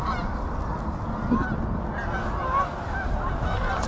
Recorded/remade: recorded